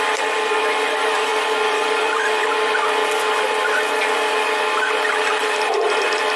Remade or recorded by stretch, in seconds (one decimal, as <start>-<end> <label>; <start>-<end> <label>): 0.0-1.3 remade; 1.3-2.0 recorded; 2.0-2.5 remade; 2.5-5.1 recorded; 5.1-6.4 remade